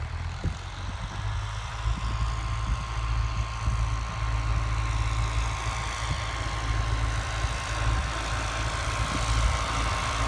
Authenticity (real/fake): real